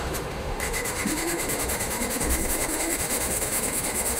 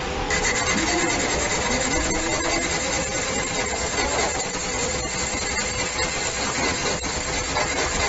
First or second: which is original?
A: second